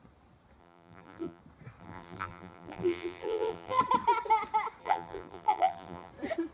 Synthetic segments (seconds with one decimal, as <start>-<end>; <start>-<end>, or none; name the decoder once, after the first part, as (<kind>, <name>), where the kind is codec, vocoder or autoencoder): 0.6-1.4 (vocoder, BigVGAN v2); 1.8-3.8; 4.8-6.1